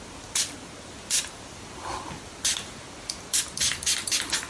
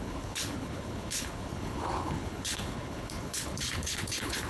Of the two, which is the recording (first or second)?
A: first